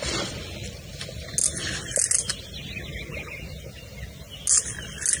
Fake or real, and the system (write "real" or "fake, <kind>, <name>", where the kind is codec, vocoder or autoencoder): real